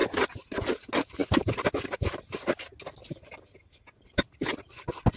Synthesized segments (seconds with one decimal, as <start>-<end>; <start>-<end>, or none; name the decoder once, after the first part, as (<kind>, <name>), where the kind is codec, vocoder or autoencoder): none